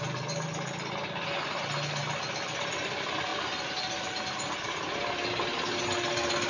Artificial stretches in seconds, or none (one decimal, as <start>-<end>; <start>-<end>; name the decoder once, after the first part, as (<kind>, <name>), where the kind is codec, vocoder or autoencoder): none